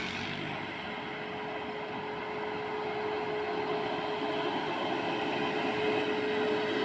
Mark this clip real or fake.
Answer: real